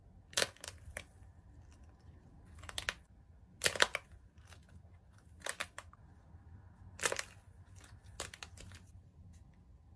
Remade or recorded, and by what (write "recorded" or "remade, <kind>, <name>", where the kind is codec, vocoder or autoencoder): recorded